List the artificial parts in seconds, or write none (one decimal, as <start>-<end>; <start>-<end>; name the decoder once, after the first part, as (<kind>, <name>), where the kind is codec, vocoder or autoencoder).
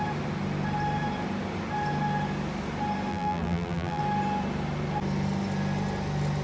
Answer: 3.1-4.0 (vocoder, BigVGAN v2)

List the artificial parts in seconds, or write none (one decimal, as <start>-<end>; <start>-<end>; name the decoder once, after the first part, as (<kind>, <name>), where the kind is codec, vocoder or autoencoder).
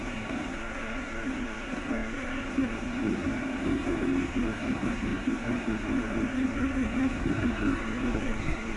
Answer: 0.0-8.8 (codec, SNAC)